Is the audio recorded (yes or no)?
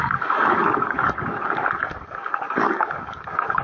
no